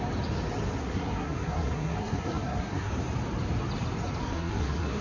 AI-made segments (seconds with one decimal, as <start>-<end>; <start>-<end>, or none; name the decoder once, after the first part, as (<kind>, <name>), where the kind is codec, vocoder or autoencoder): 0.8-2.9 (codec, SNAC); 4.2-5.0